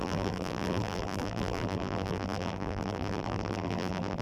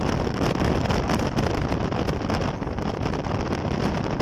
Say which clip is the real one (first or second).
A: second